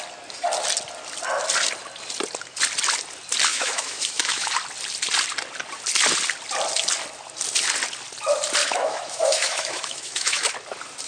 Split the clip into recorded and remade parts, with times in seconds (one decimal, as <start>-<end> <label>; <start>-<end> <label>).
0.0-3.5 recorded; 3.5-4.5 remade; 4.5-8.6 recorded; 8.6-10.5 remade; 10.5-11.1 recorded